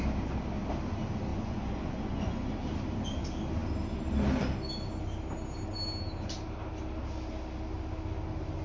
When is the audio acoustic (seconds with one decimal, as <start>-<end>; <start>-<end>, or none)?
0.0-1.3; 2.5-8.6